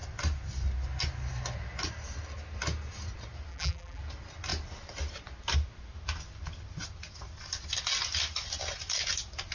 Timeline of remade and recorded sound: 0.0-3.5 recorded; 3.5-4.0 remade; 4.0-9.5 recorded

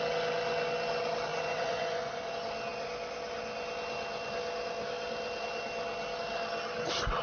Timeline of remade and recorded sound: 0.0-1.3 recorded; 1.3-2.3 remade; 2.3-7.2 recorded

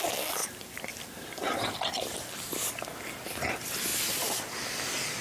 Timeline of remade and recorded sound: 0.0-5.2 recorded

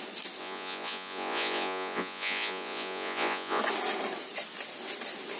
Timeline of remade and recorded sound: 0.0-0.4 recorded; 0.4-3.6 remade; 3.6-5.4 recorded

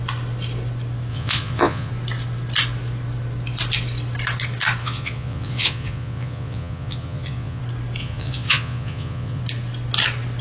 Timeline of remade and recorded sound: 0.0-1.1 recorded; 1.1-1.9 remade; 1.9-4.8 recorded; 4.8-7.6 remade; 7.6-8.0 recorded; 8.0-9.4 remade; 9.4-10.4 recorded

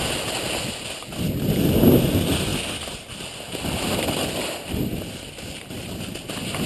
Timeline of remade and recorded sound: 0.0-6.7 recorded